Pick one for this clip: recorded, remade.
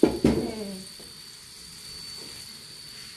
recorded